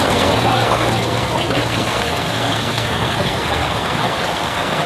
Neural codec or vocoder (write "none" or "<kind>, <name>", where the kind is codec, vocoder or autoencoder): codec, SNAC